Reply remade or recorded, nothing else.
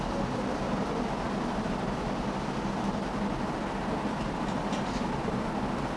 recorded